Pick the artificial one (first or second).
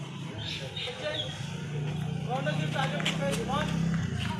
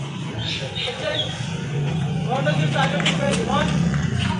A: second